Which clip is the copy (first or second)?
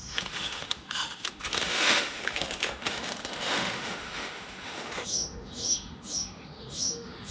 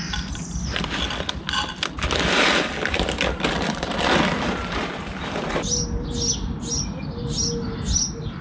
first